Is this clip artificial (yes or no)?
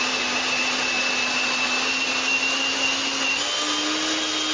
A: no